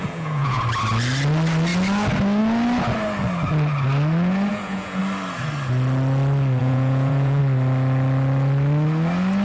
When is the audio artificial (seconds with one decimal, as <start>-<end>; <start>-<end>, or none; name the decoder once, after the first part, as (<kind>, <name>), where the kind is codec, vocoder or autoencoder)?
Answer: 0.0-0.6 (vocoder, Vocos); 4.5-5.0; 6.6-7.4